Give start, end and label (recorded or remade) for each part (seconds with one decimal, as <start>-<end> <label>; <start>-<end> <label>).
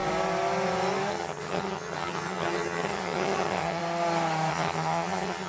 0.0-1.1 recorded; 1.1-3.8 remade; 3.8-4.5 recorded; 4.5-5.5 remade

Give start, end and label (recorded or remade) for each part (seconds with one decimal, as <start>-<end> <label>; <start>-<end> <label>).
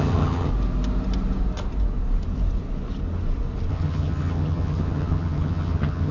0.0-0.5 remade; 0.5-3.7 recorded; 3.7-6.1 remade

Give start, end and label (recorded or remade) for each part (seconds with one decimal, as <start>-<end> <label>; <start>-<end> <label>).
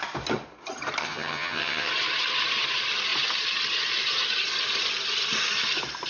0.0-1.0 recorded; 1.0-1.9 remade; 1.9-6.1 recorded